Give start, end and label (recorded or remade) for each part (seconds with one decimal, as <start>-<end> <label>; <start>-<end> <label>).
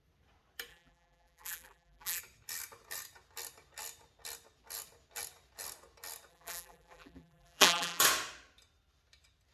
0.0-0.7 recorded; 0.7-2.2 remade; 2.2-6.3 recorded; 6.3-8.0 remade; 8.0-9.5 recorded